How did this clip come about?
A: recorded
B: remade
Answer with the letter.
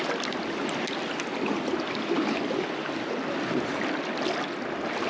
A